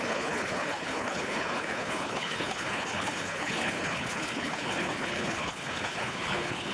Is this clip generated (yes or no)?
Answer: yes